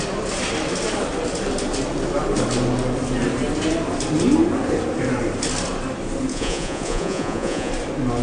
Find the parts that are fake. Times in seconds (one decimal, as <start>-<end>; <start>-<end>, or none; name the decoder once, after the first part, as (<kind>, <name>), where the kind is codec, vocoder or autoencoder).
6.3-7.7 (vocoder, Vocos)